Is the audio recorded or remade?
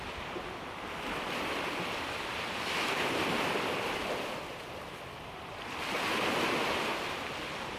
recorded